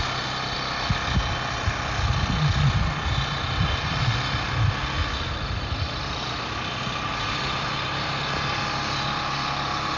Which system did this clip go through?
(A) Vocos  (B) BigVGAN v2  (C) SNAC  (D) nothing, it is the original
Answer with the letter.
D